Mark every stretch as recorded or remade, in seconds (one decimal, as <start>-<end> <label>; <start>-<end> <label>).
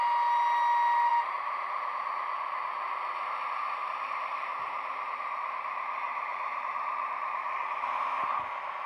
0.0-1.1 recorded; 1.1-2.1 remade; 2.1-3.8 recorded; 3.8-5.5 remade; 5.5-6.1 recorded; 6.1-7.6 remade; 7.6-8.9 recorded